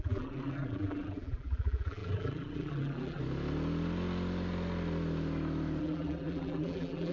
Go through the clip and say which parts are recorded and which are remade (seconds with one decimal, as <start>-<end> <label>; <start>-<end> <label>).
0.0-3.2 remade; 3.2-5.8 recorded; 5.8-7.1 remade